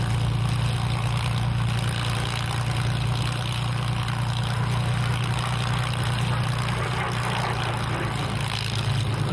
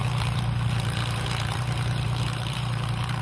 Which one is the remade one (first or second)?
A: second